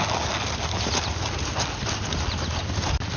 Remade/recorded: recorded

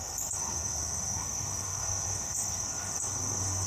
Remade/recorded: remade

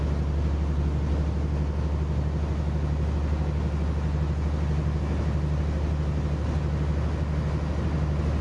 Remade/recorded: recorded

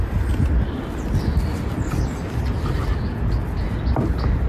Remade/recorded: recorded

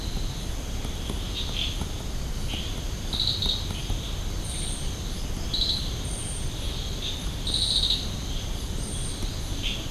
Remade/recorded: recorded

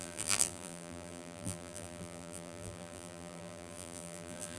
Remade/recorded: remade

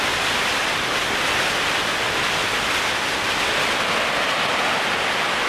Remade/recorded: recorded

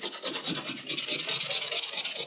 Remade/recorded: recorded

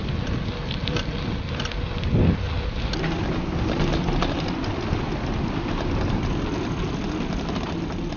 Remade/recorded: recorded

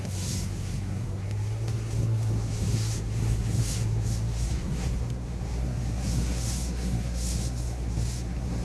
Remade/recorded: remade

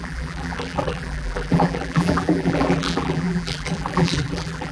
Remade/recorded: remade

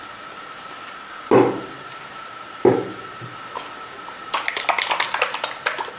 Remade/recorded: recorded